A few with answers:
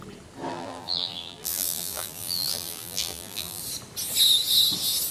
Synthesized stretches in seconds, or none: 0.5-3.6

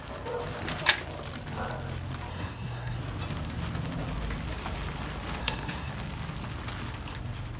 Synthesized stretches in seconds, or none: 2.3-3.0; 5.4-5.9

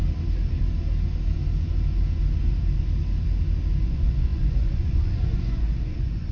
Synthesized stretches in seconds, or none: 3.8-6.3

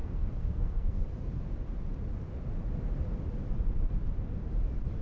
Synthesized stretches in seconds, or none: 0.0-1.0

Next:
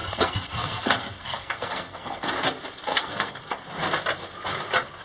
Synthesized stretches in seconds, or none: 0.0-2.3; 2.9-3.4

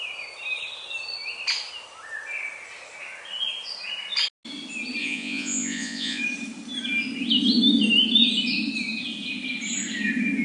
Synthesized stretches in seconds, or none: 5.0-6.2